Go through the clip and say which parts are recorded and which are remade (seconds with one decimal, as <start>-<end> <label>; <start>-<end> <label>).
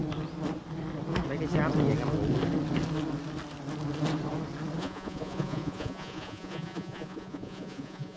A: 0.0-4.8 recorded; 4.8-8.2 remade